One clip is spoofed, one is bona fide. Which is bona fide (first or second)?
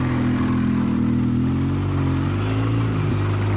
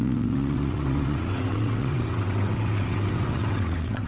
first